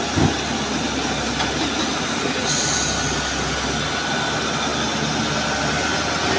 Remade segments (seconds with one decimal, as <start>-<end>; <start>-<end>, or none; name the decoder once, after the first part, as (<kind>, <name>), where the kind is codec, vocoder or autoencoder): none